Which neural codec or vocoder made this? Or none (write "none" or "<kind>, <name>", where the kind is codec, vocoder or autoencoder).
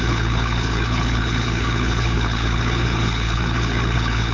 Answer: codec, HILCodec